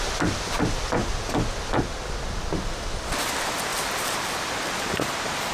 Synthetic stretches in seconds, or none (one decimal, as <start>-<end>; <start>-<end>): 0.0-1.0; 3.1-5.5